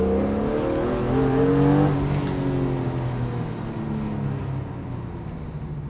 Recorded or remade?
recorded